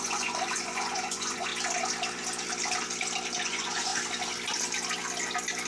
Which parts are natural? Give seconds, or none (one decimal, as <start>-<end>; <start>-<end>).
1.5-3.4; 3.9-5.7